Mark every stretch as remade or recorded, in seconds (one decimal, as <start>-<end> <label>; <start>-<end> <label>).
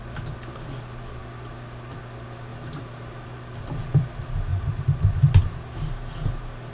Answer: 0.0-2.5 recorded; 2.5-3.6 remade; 3.6-4.5 recorded; 4.5-5.4 remade; 5.4-6.7 recorded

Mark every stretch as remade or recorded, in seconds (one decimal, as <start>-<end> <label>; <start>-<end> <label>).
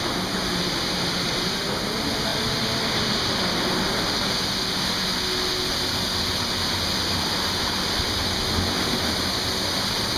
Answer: 0.0-10.2 recorded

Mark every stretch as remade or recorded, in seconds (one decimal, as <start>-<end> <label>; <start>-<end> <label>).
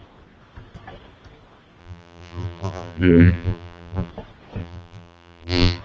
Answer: 0.0-1.8 recorded; 1.8-4.1 remade; 4.1-4.6 recorded; 4.6-5.8 remade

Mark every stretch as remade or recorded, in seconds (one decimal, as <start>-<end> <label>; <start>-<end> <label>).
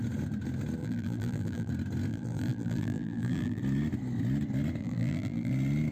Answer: 0.0-0.8 recorded; 0.8-1.7 remade; 1.7-2.1 recorded; 2.1-3.6 remade; 3.6-4.8 recorded; 4.8-5.5 remade; 5.5-5.9 recorded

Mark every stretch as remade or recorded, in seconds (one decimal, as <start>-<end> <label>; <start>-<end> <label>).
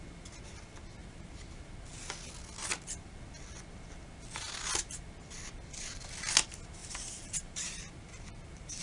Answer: 0.0-1.0 recorded; 1.0-1.6 remade; 1.6-6.8 recorded; 6.8-8.8 remade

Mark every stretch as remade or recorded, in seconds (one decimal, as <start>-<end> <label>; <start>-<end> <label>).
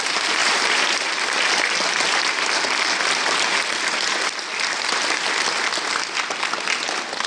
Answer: 0.0-0.4 recorded; 0.4-1.2 remade; 1.2-7.3 recorded